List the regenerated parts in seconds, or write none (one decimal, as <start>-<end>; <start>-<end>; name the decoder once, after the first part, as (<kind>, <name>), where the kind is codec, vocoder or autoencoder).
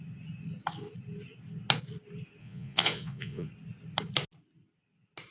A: 2.4-3.5 (vocoder, Vocos)